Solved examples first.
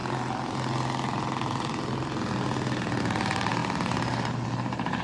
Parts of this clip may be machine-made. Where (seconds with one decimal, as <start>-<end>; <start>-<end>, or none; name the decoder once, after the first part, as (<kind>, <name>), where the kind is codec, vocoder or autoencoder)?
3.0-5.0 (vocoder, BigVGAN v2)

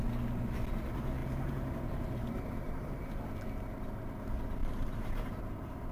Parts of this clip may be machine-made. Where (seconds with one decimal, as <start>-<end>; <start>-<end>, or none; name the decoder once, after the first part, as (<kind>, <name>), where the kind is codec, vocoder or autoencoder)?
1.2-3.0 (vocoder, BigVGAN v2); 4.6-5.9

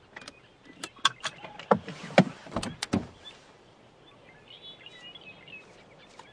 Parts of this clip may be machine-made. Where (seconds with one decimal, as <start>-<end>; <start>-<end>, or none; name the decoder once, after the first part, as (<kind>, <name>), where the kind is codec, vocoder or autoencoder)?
2.4-3.8 (vocoder, BigVGAN v2)